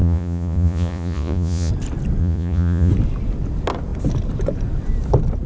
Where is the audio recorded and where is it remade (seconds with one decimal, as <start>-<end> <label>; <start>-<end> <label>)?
0.0-1.7 remade; 1.7-2.2 recorded; 2.2-2.9 remade; 2.9-5.5 recorded